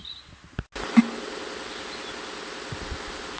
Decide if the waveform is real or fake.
real